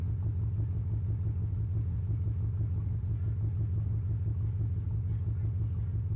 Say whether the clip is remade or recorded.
recorded